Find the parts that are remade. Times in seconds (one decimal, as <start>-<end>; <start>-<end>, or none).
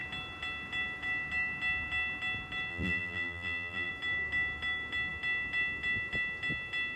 2.7-3.9